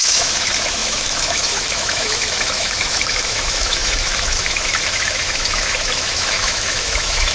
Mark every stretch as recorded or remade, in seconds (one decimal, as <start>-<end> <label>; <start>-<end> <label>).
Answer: 0.0-7.3 remade